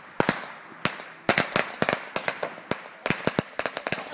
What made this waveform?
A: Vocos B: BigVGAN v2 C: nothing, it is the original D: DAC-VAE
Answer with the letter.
C